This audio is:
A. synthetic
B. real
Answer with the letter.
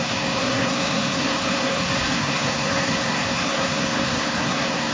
A